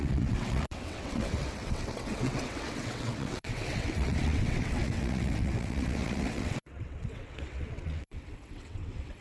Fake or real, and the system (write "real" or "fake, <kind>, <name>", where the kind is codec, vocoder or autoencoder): fake, vocoder, WaveNeXt